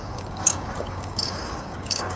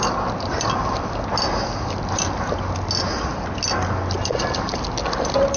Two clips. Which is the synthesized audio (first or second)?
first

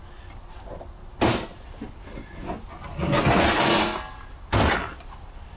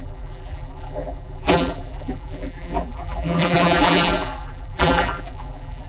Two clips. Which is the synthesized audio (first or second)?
second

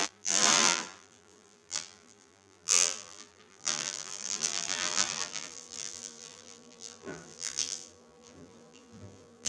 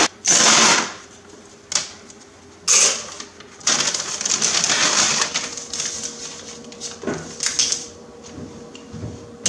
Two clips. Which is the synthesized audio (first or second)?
first